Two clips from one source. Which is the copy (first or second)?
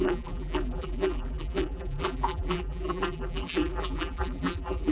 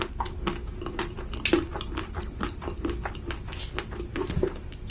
first